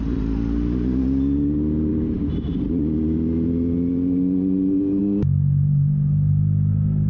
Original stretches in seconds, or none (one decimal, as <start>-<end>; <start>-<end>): 0.0-7.1